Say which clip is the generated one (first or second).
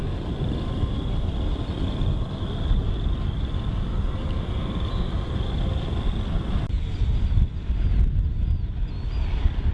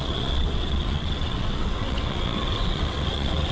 second